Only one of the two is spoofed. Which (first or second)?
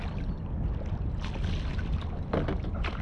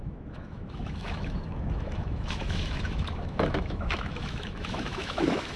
second